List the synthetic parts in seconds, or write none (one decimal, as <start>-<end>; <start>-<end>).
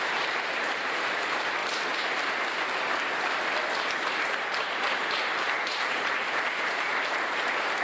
0.0-1.6; 5.9-7.8